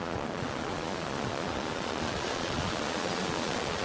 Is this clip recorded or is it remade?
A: remade